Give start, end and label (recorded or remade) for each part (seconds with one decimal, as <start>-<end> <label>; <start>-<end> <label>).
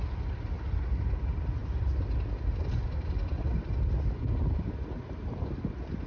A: 0.0-6.1 recorded